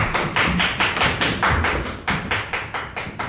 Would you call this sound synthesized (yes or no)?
no